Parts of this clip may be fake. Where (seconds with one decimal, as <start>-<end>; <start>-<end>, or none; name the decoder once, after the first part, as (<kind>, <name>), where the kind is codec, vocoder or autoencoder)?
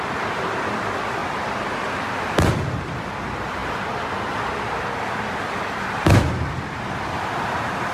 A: 0.0-1.2 (vocoder, BigVGAN v2); 2.0-7.9